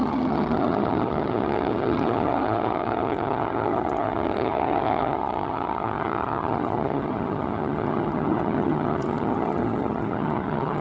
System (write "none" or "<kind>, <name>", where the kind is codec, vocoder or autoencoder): vocoder, HiFi-GAN